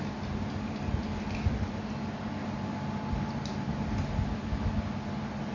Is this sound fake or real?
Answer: real